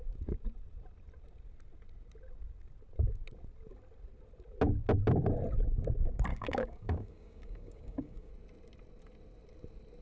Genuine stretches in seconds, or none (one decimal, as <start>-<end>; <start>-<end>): 0.0-6.3; 8.3-10.0